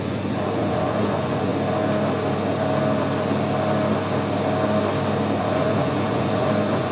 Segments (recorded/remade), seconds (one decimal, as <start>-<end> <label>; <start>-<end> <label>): 0.0-1.5 remade; 1.5-5.4 recorded; 5.4-6.9 remade